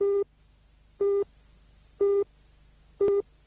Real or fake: real